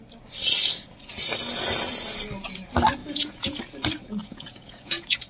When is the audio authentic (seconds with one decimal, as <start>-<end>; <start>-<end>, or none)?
0.0-3.0; 3.6-4.2